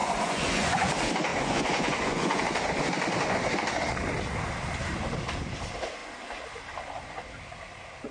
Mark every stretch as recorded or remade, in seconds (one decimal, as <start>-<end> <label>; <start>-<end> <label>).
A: 0.0-0.9 remade; 0.9-1.3 recorded; 1.3-2.4 remade; 2.4-8.1 recorded